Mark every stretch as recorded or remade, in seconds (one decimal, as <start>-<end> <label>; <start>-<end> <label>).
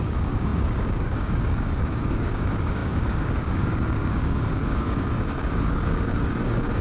0.0-6.8 remade